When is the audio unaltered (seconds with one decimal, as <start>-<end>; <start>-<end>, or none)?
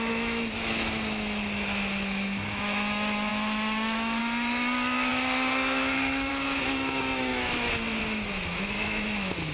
none